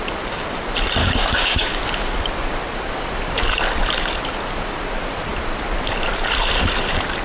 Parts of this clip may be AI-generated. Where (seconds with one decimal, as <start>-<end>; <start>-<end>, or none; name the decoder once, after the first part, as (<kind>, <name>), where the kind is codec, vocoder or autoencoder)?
1.0-1.8 (codec, DAC)